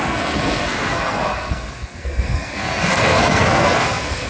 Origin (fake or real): fake